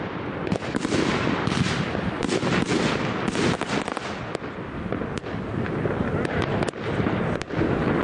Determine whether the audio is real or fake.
real